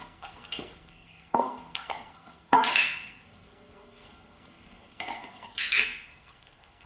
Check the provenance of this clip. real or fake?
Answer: fake